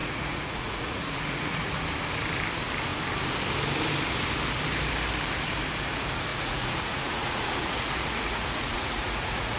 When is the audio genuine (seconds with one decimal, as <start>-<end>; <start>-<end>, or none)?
1.8-6.3